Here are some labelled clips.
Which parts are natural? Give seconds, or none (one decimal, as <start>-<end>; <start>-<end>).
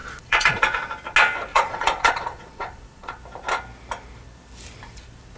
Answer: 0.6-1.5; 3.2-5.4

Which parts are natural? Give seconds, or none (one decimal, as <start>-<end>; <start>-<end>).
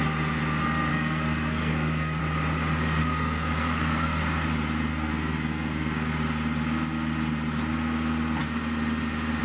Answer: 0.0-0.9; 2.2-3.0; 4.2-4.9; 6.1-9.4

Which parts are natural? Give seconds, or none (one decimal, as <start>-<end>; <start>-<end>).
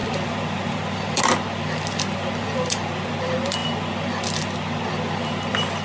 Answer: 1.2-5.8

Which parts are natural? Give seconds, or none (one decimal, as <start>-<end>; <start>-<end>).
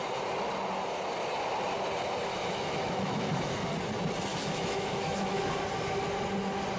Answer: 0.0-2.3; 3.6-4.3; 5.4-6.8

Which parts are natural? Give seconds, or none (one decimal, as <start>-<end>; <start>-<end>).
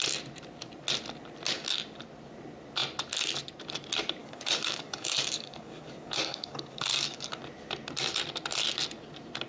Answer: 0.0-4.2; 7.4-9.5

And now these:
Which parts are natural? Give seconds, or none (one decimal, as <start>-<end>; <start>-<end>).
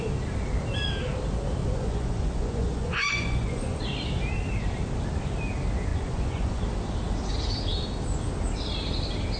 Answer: 0.0-1.6; 3.8-5.9; 6.6-9.4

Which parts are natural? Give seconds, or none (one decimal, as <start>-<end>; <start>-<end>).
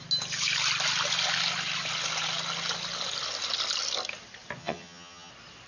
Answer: 0.0-4.6; 5.3-5.7